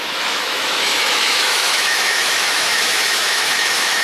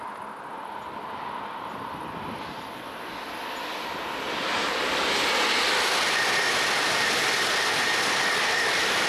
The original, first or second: second